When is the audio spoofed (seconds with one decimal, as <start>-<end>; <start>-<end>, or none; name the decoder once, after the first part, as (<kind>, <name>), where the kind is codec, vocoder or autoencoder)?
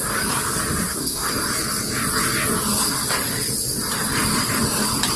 0.8-1.3 (codec, SNAC)